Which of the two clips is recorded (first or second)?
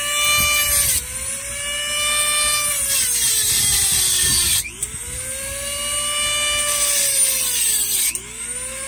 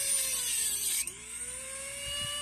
first